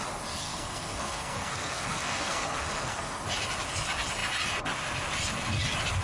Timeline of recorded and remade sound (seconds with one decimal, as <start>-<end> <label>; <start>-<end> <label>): 0.0-0.4 recorded; 0.4-3.2 remade; 3.2-6.0 recorded